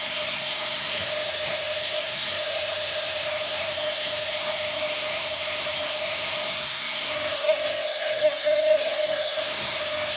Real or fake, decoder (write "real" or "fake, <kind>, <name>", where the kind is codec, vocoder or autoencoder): fake, codec, SNAC